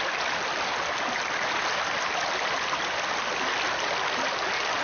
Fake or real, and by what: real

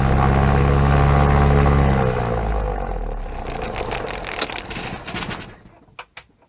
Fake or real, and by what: real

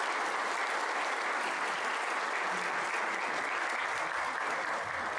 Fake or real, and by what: real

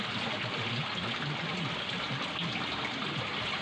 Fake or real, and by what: real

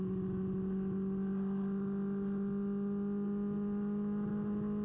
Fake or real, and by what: real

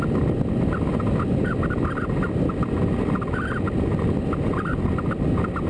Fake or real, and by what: real